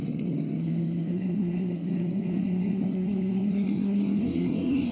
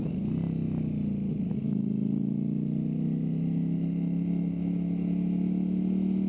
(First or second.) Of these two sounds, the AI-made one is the first